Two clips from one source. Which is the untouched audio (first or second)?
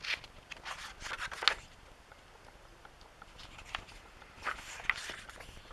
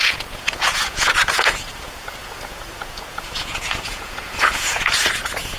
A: first